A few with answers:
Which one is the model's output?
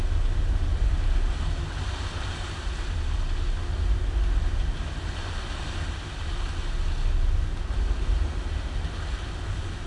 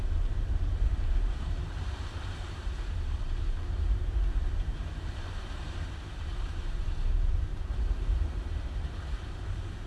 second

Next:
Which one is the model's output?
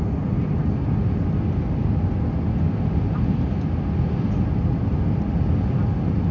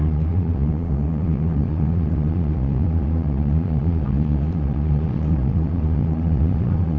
second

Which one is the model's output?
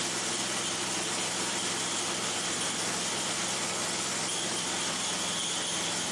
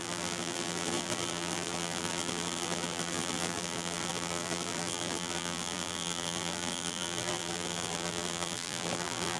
second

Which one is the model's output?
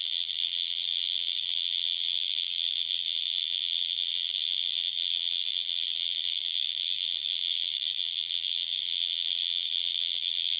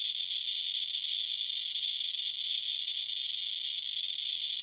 first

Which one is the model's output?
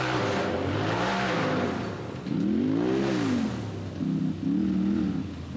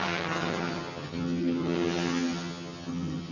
second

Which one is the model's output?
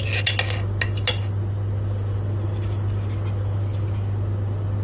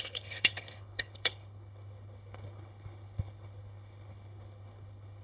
second